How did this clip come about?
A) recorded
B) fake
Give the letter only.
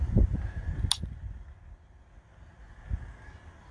A